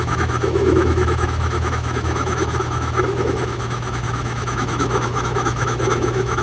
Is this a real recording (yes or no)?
no